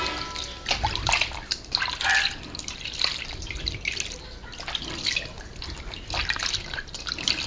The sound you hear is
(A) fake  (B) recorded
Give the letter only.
B